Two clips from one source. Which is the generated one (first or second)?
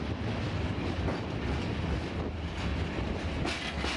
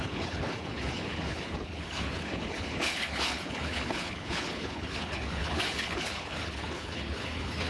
second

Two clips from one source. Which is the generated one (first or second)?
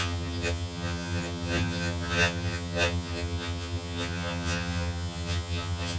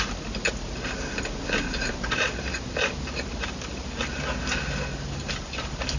first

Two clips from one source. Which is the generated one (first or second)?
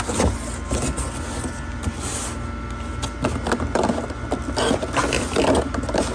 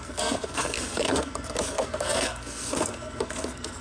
second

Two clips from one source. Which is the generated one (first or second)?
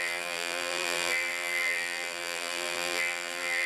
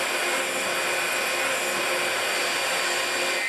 first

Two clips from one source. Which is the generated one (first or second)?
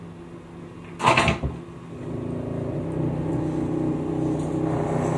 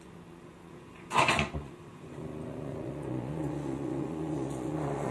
second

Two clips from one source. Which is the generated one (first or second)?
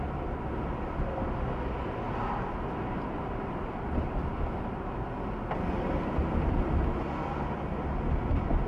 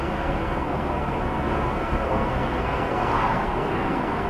second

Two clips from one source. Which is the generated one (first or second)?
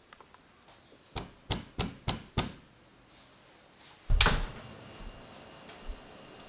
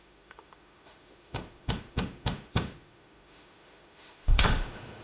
second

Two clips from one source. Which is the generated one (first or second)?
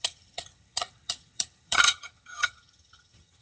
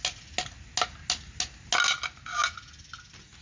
first